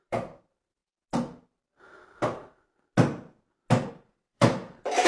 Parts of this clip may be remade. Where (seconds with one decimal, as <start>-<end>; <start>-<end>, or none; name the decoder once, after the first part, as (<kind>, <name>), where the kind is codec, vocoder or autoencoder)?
0.0-0.8 (vocoder, BigVGAN v2); 3.9-5.1